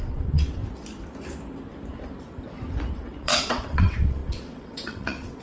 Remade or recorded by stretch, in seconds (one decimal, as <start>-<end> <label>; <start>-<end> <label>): 0.0-0.6 remade; 0.6-2.9 recorded; 2.9-5.4 remade